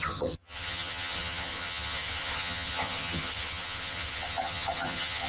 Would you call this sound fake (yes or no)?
yes